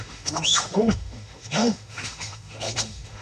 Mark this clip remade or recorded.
remade